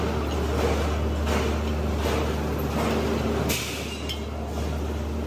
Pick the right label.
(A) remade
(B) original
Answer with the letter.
B